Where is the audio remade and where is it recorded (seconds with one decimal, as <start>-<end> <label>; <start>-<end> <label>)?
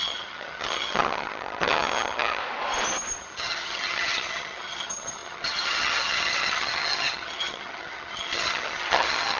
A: 0.0-2.4 remade; 2.4-3.2 recorded; 3.2-9.4 remade